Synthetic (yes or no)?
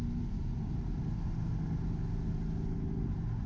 no